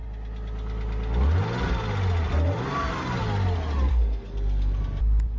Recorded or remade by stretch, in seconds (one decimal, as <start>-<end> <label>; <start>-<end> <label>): 0.0-3.9 recorded; 3.9-4.8 remade; 4.8-5.4 recorded